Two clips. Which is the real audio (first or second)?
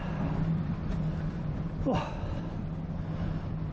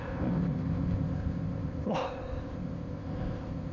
first